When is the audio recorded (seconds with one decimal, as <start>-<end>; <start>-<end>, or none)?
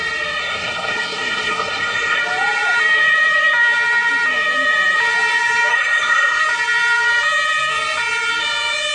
0.0-0.4; 2.2-5.7; 6.4-8.9